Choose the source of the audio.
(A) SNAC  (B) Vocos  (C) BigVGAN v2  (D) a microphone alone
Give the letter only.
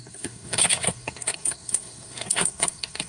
A